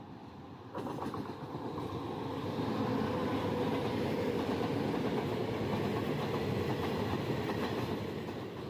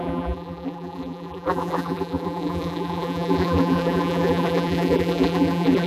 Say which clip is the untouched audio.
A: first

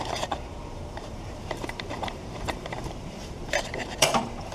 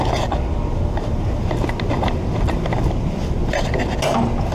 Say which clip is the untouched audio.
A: second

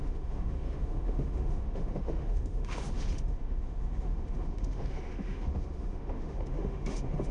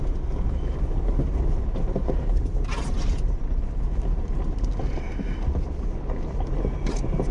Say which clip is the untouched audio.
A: second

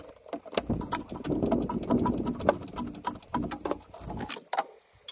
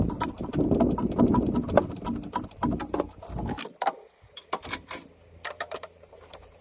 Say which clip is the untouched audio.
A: first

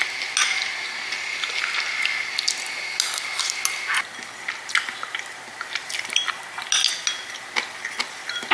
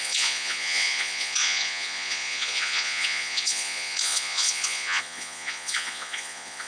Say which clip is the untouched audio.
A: first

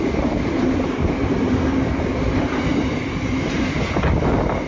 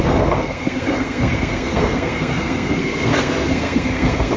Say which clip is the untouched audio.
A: first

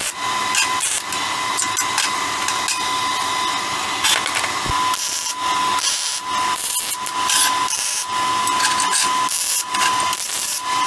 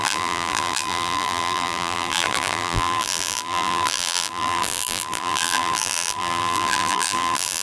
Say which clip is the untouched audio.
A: first